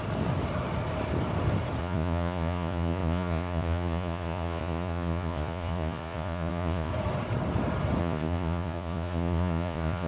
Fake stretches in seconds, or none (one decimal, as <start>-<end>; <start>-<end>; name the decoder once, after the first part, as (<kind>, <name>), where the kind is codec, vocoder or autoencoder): 1.8-6.9 (vocoder, Vocos); 8.0-10.1